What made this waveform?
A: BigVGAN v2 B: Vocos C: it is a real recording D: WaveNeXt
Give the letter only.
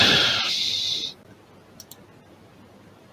A